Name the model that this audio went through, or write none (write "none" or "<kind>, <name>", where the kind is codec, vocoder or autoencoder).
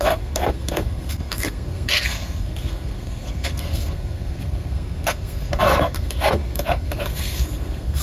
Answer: codec, SNAC